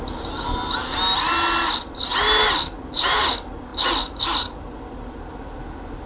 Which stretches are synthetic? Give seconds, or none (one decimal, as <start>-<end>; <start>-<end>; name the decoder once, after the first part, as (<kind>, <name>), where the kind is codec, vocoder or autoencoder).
none